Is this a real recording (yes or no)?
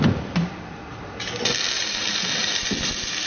yes